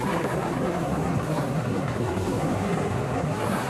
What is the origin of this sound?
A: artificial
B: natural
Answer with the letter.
A